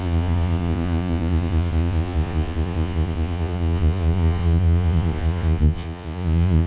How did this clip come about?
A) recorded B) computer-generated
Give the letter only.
B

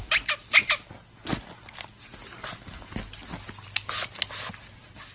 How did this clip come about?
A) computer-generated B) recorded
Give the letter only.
B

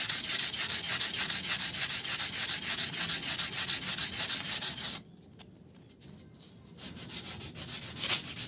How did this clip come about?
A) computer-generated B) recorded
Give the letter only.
B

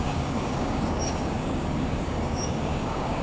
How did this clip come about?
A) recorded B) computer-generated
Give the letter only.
B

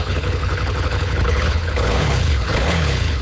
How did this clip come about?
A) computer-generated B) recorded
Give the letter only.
A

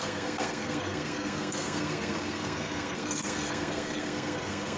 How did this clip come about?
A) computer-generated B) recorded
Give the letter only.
A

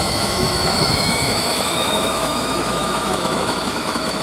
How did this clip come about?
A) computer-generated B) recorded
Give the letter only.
A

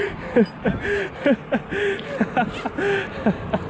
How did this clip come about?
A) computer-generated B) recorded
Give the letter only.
B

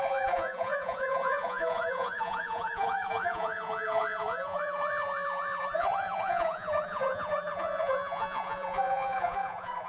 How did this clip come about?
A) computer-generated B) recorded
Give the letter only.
A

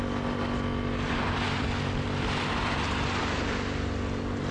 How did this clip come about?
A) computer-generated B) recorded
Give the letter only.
B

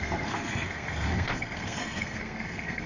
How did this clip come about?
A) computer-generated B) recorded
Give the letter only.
A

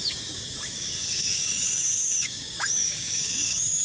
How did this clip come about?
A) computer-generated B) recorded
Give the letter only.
A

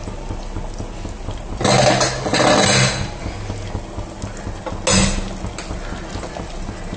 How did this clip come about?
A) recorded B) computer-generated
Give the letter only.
A